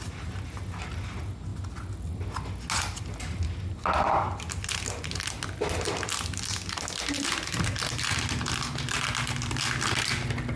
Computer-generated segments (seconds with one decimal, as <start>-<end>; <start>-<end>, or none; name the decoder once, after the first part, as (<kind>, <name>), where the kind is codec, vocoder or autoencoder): none